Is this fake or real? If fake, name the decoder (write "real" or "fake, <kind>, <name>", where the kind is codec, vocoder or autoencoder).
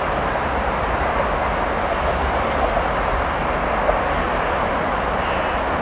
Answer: real